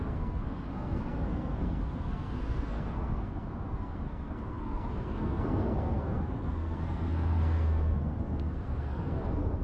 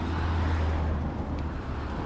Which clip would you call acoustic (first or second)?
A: second